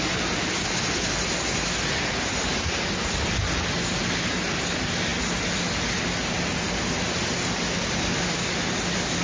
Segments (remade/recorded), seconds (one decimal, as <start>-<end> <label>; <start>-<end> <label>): 0.0-9.2 recorded